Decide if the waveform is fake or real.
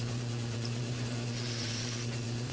fake